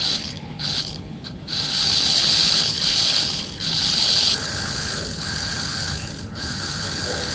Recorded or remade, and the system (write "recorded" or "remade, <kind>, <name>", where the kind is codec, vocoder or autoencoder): remade, codec, HILCodec